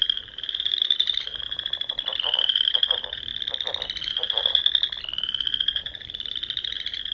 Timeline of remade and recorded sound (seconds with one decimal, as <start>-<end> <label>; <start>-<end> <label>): 0.0-3.3 remade; 3.3-4.1 recorded; 4.1-4.6 remade; 4.6-5.6 recorded; 5.6-7.1 remade